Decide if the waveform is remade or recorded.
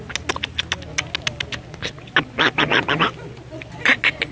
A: recorded